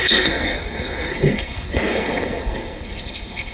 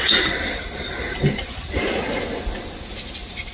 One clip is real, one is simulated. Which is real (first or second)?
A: second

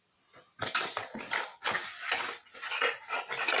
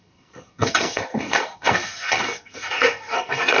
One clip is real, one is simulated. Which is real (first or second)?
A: first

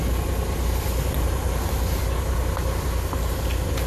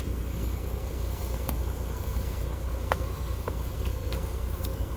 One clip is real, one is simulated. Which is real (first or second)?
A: first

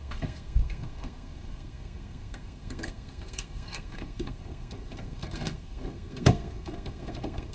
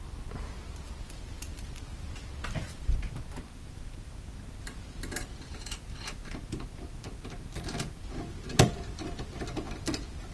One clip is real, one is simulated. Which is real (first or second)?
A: second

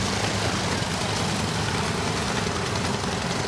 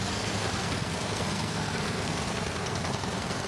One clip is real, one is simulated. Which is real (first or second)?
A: first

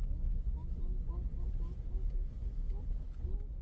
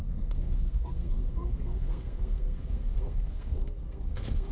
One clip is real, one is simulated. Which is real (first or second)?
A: first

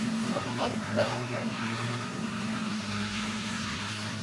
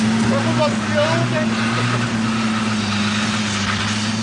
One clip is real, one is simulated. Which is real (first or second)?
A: second